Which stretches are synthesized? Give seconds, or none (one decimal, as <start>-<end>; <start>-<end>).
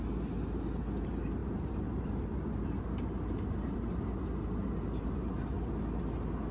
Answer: 1.4-4.0